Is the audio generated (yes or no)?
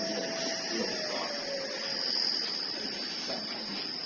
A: no